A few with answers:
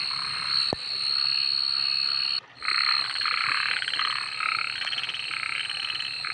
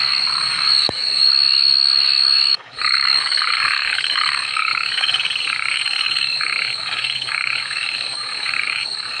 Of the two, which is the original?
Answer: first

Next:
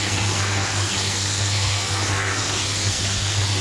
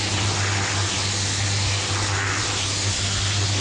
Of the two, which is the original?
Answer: second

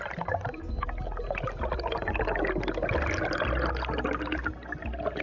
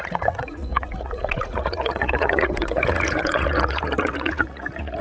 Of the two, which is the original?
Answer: first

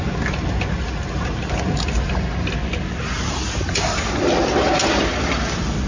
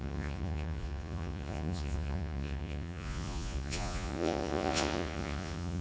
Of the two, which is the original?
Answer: first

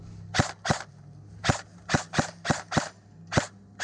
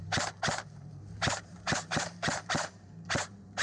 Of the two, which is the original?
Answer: first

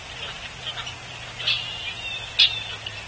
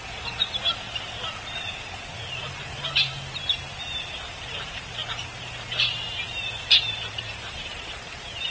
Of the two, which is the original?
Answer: first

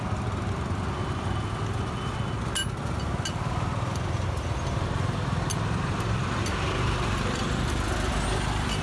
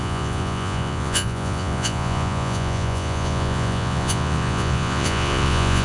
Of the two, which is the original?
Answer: first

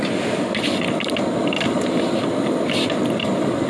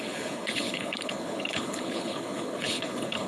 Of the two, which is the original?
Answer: first